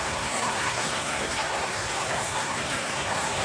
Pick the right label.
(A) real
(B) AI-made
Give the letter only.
B